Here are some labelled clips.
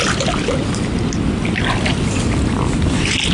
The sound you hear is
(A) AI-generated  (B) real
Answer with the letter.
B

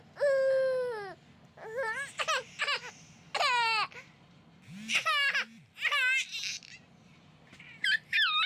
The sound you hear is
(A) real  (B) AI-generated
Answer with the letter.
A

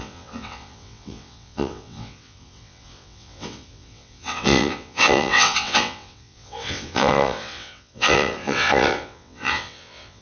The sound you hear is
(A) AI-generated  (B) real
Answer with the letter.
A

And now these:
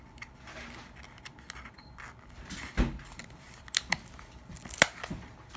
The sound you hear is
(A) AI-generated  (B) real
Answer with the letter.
B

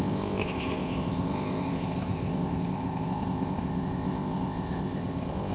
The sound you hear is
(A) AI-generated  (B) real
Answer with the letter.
A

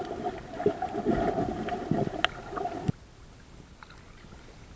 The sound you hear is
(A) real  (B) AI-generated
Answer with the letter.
A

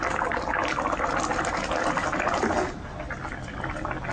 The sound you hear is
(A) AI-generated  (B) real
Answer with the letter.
B